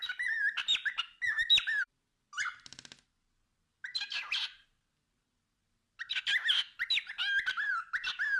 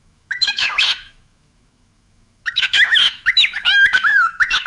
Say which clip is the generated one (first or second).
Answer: second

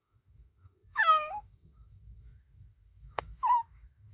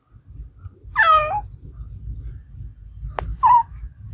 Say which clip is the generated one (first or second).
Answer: first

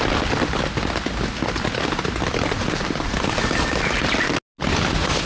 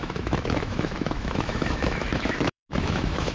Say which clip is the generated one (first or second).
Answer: second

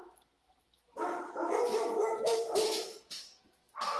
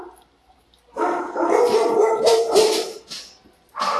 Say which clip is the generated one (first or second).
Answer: first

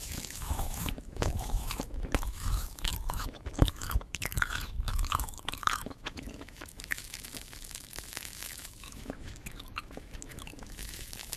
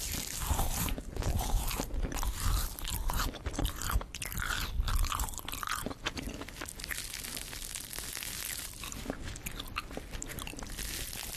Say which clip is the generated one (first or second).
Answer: first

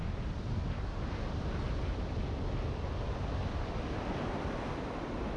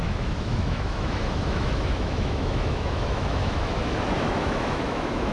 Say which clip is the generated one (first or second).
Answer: second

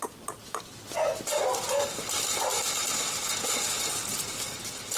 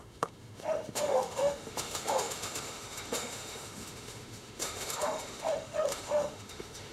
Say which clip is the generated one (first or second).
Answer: second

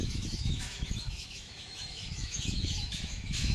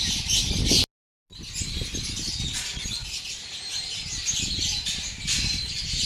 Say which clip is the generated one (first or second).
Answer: first